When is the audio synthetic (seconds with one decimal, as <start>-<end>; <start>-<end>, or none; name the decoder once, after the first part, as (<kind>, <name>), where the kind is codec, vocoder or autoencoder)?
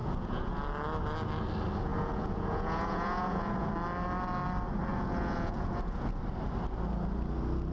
0.0-0.6 (vocoder, Vocos); 1.9-3.7; 4.9-6.2